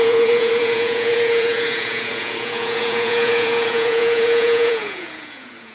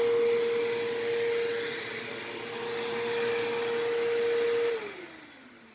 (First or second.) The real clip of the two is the second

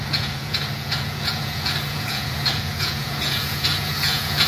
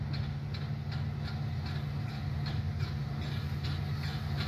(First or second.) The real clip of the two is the second